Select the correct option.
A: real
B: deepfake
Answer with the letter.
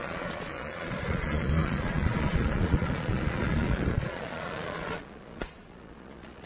B